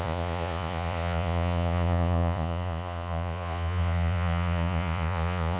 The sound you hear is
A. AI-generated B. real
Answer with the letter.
A